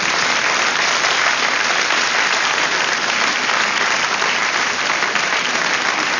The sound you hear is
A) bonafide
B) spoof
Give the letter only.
A